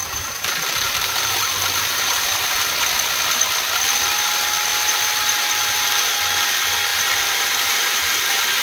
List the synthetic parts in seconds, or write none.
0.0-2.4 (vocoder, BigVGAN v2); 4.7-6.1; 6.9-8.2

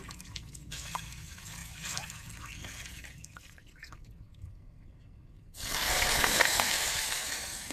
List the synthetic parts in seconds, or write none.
0.0-7.7 (codec, SNAC)

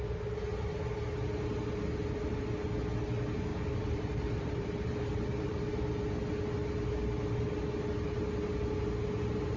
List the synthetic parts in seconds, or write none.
3.5-5.6 (vocoder, BigVGAN v2)

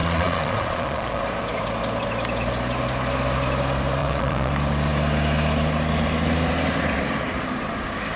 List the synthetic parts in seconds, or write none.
0.0-1.2 (vocoder, Vocos); 4.0-4.5

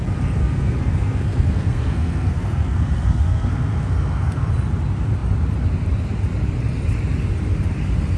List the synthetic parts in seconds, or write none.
0.4-4.5 (codec, SNAC)

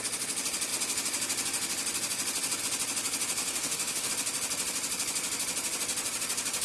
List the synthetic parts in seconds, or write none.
3.4-4.1 (autoencoder, DAC-VAE)

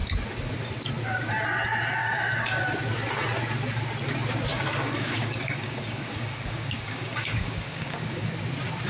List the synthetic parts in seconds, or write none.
2.0-2.6 (codec, DAC); 4.5-8.3

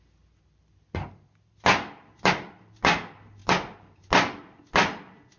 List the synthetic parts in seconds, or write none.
none